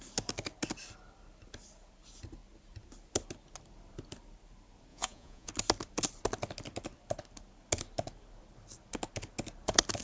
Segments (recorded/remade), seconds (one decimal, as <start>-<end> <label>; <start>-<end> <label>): 0.0-4.9 recorded; 4.9-5.5 remade; 5.5-10.0 recorded